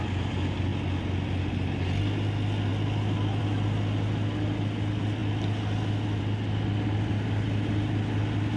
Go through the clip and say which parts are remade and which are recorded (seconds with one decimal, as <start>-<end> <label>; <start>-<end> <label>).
0.0-8.6 recorded